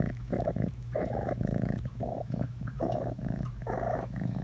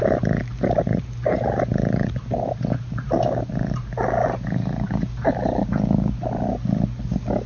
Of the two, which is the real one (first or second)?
second